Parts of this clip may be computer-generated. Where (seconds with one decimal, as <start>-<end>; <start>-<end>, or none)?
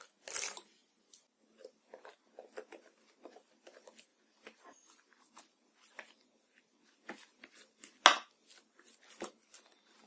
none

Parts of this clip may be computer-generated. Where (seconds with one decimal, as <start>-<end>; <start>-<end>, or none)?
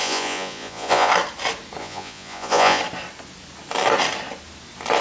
0.0-1.1; 1.8-2.8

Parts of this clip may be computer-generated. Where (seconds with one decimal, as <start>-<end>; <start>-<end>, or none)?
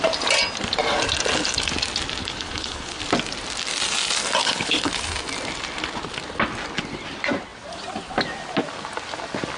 2.2-3.0; 4.4-4.9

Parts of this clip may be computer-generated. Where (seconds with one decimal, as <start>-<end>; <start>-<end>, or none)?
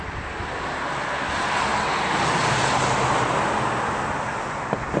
none